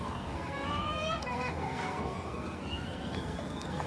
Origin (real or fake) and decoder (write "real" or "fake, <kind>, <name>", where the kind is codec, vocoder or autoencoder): fake, codec, SNAC